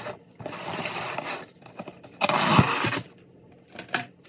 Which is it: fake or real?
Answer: fake